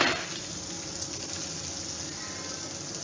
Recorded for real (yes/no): yes